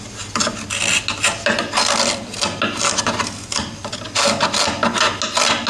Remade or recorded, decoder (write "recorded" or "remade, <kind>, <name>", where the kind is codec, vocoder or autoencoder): recorded